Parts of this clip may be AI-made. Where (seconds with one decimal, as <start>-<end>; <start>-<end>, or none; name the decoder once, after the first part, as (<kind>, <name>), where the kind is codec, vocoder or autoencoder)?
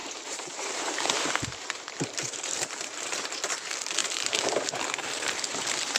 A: 0.0-3.5 (vocoder, BigVGAN v2); 4.0-4.5